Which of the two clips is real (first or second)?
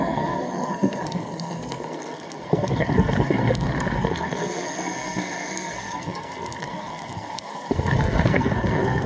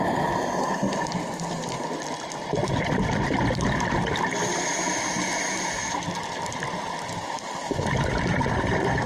second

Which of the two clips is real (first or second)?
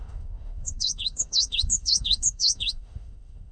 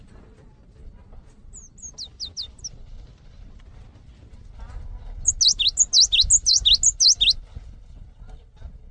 second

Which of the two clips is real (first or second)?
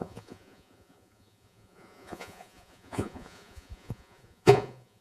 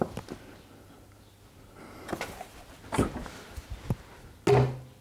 second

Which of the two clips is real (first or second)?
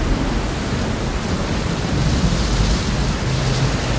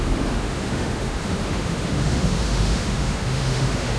first